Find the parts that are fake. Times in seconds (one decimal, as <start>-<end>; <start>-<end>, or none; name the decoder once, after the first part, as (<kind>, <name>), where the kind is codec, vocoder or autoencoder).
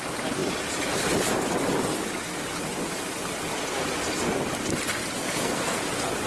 5.2-5.8 (codec, SNAC)